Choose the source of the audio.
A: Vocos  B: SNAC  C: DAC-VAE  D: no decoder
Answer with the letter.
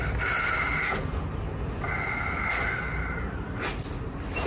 D